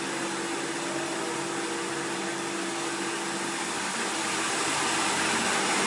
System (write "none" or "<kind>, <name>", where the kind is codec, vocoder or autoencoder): none